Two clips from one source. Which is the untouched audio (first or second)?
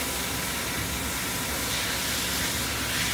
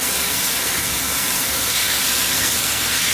first